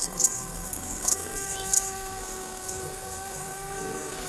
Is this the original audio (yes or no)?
no